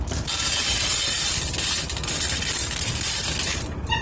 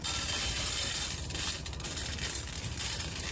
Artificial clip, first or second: second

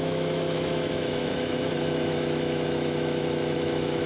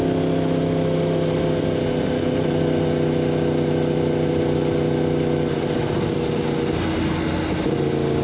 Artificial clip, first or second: first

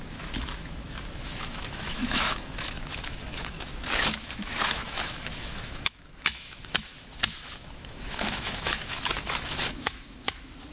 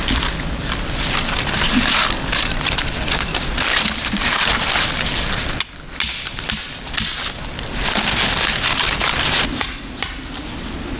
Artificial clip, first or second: first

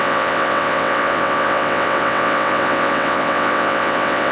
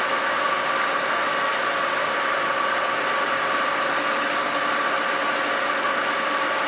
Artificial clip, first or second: first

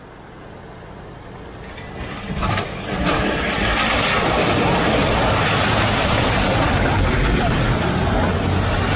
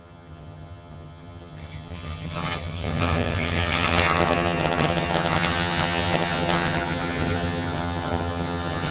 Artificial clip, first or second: second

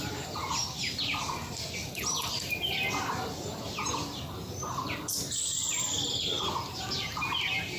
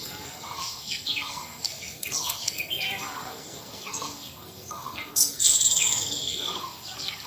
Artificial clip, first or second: second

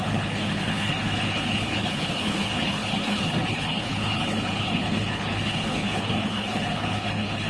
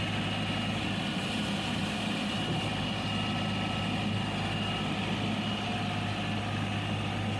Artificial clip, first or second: first